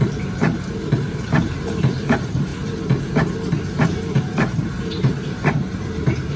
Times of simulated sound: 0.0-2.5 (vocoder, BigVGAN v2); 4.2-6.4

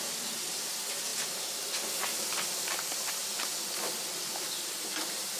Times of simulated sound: none

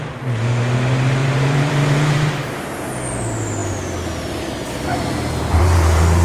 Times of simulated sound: 1.2-2.9 (vocoder, BigVGAN v2)

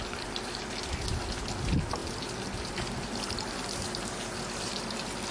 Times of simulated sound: none

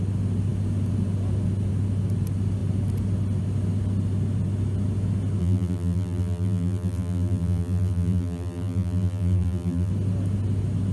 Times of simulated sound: 5.4-9.9 (vocoder, BigVGAN v2)

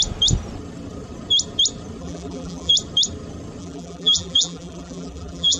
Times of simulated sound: 2.0-2.7 (vocoder, BigVGAN v2); 3.6-5.6

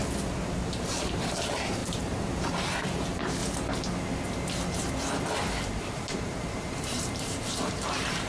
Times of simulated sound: 0.0-3.4 (vocoder, BigVGAN v2); 5.8-8.3